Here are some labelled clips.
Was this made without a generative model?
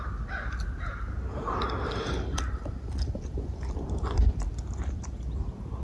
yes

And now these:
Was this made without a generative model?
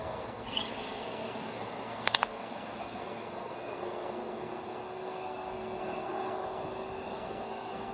no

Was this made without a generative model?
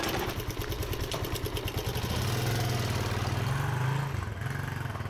yes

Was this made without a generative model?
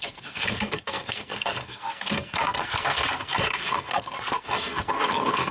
no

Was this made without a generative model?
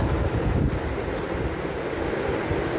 yes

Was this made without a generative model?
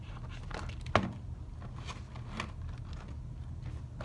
yes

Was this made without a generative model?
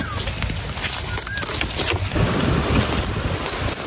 yes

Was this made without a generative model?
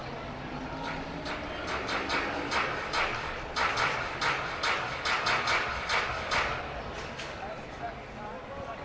yes